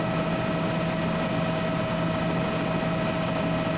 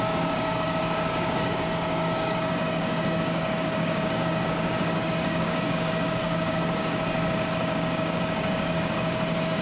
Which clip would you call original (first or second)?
first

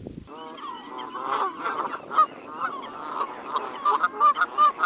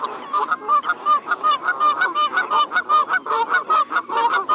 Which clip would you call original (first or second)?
first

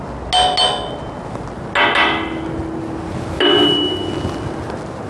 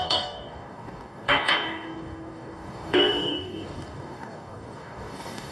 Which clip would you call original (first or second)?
first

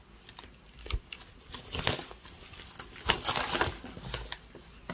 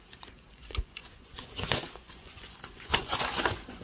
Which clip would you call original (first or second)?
first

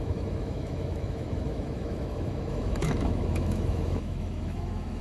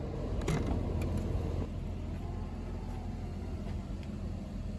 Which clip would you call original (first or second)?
second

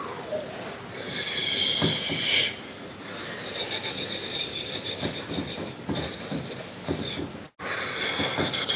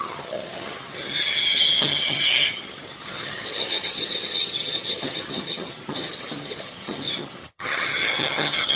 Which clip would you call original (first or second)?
first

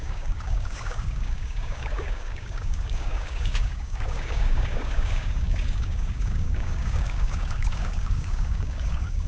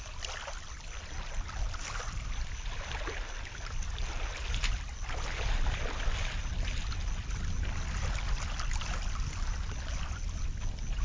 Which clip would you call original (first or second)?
second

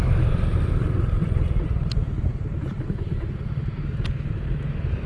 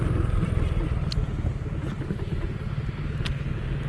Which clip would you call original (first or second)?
second